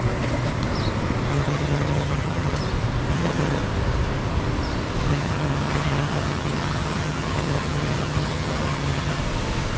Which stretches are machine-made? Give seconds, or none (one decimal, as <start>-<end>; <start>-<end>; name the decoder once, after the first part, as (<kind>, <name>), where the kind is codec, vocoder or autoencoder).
1.3-2.6 (vocoder, HiFi-GAN); 3.1-3.6; 5.1-9.2